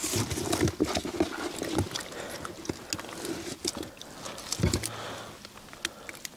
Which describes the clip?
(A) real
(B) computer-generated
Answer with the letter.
A